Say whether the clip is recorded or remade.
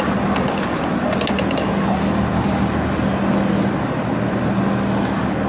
recorded